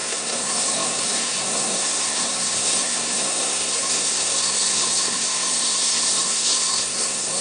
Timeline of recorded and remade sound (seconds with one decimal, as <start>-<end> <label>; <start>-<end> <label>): 0.0-7.4 remade